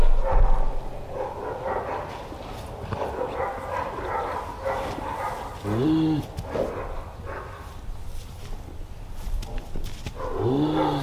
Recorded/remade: recorded